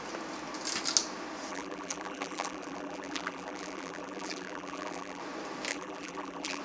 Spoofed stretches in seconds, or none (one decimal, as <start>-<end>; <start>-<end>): 1.5-5.2; 5.7-6.6